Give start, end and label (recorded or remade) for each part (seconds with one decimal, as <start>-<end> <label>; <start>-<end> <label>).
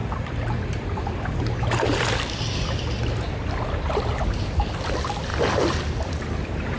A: 0.0-3.3 remade; 3.3-5.3 recorded; 5.3-6.8 remade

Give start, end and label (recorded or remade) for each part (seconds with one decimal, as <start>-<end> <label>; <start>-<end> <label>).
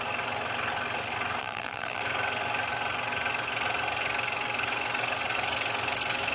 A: 0.0-1.4 recorded; 1.4-2.0 remade; 2.0-6.3 recorded